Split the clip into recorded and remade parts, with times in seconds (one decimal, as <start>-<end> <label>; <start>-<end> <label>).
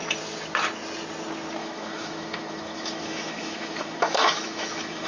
0.0-1.6 recorded; 1.6-5.1 remade